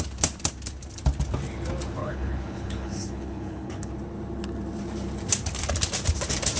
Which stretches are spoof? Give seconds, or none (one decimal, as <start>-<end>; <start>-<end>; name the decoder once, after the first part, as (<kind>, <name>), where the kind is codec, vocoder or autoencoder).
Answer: 2.0-3.9 (codec, HILCodec)